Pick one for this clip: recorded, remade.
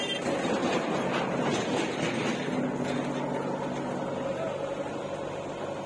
recorded